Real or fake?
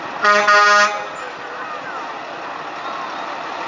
real